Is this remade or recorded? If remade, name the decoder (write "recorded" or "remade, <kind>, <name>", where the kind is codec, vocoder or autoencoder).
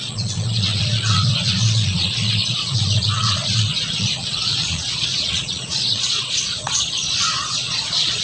remade, vocoder, Vocos